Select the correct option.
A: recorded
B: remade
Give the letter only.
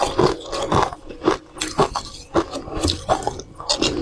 A